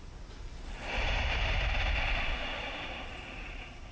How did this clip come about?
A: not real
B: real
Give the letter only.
A